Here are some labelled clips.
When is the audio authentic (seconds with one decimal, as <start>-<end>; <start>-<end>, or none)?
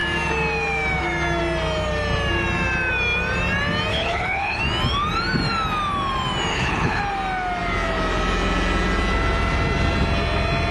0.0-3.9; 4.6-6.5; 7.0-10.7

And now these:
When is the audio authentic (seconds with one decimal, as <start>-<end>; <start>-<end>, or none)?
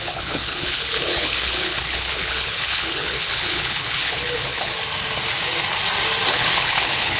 4.7-6.3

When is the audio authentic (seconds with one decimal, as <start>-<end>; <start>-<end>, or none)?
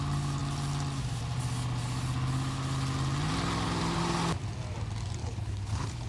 0.0-5.2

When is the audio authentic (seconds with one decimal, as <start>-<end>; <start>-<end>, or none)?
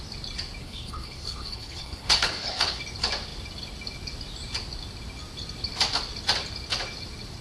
0.0-0.6; 2.8-7.4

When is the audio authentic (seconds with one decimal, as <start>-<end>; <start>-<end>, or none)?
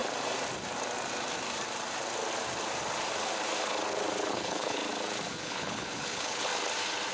0.0-4.3; 4.8-5.4; 6.5-7.1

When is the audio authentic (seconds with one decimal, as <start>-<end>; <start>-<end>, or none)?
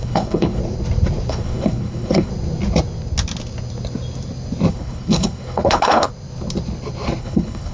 0.6-1.3; 2.3-4.7; 6.1-7.2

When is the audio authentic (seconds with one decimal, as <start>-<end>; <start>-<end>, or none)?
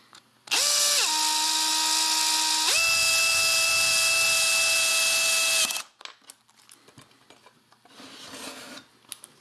0.0-9.4